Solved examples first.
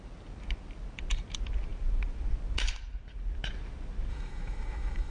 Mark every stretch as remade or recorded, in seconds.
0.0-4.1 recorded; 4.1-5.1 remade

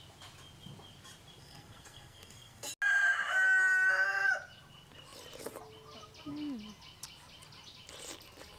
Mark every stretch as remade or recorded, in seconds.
0.0-1.4 recorded; 1.4-2.7 remade; 2.7-8.6 recorded

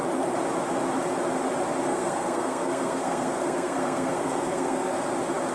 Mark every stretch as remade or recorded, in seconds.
0.0-1.9 recorded; 1.9-5.0 remade; 5.0-5.5 recorded

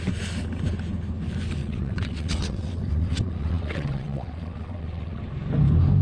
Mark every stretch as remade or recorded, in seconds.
0.0-1.6 recorded; 1.6-5.2 remade; 5.2-6.0 recorded

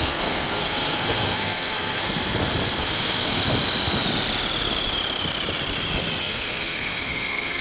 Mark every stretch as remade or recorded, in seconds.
0.0-2.0 remade; 2.0-2.8 recorded; 2.8-3.4 remade; 3.4-6.2 recorded; 6.2-7.6 remade

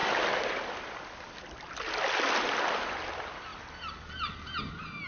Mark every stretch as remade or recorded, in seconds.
0.0-5.1 recorded

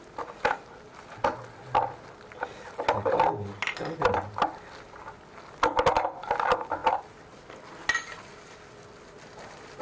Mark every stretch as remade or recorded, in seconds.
0.0-9.8 recorded

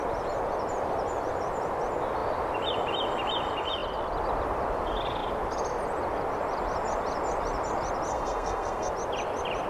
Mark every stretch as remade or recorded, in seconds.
0.0-8.1 recorded; 8.1-8.9 remade; 8.9-9.7 recorded